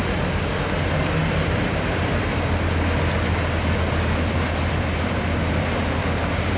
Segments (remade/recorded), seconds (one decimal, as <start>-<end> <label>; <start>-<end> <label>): 0.0-6.6 recorded